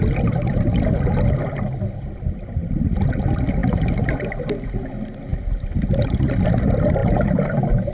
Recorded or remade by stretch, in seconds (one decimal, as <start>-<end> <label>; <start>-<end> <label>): 0.0-7.9 recorded